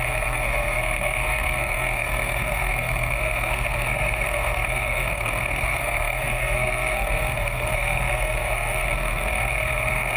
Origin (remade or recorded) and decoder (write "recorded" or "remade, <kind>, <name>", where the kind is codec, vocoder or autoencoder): remade, codec, SNAC